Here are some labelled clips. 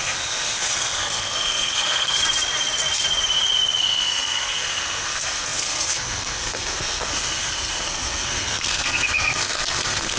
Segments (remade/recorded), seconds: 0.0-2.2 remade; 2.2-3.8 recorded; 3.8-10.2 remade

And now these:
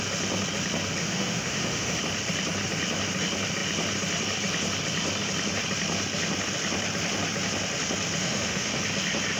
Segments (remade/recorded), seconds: 0.0-1.0 recorded; 1.0-2.0 remade; 2.0-8.2 recorded; 8.2-8.8 remade; 8.8-9.4 recorded

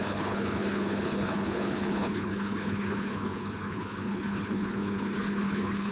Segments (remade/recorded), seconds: 0.0-5.9 remade

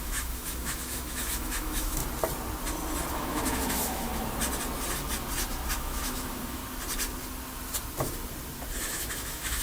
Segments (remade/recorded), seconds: 0.0-2.0 remade; 2.0-3.1 recorded; 3.1-4.1 remade; 4.1-5.8 recorded; 5.8-6.6 remade; 6.6-8.8 recorded; 8.8-9.6 remade

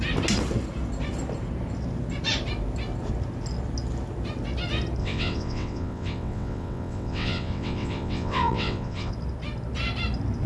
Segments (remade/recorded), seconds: 0.0-5.0 recorded; 5.0-9.1 remade; 9.1-10.5 recorded